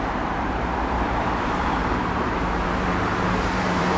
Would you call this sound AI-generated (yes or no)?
yes